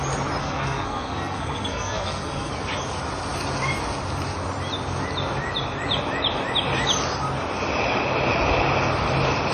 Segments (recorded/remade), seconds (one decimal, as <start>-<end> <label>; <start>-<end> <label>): 0.0-0.4 recorded; 0.4-2.5 remade; 2.5-9.5 recorded